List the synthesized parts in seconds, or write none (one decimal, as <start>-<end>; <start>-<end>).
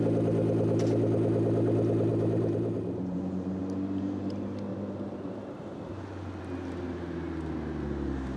2.1-3.6; 4.7-6.4